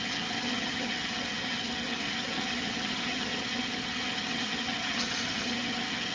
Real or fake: fake